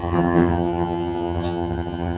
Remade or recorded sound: remade